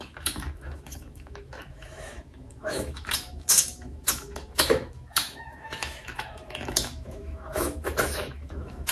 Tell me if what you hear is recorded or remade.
remade